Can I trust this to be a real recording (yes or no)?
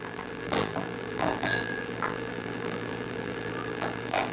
no